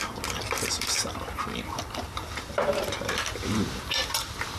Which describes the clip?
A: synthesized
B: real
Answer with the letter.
A